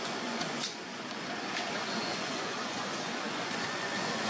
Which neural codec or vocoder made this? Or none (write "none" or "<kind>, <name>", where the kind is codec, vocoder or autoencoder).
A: vocoder, Vocos